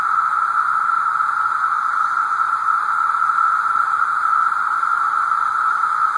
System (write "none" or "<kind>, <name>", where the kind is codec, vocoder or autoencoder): none